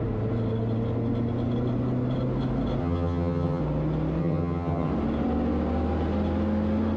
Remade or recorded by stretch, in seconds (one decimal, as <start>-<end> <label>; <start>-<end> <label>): 0.0-2.8 recorded; 2.8-3.6 remade; 3.6-4.2 recorded; 4.2-4.9 remade; 4.9-7.0 recorded